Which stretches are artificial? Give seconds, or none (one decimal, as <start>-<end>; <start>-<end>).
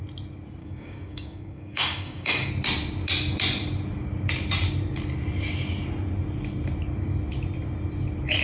0.6-2.5